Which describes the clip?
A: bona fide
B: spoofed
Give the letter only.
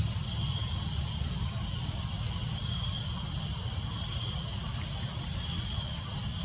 A